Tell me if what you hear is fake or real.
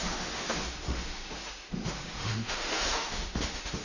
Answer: fake